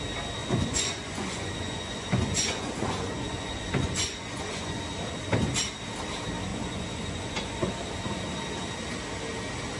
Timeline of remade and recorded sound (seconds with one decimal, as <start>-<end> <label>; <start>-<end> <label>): 0.0-0.4 recorded; 0.4-4.8 remade; 4.8-6.5 recorded; 6.5-7.7 remade; 7.7-9.8 recorded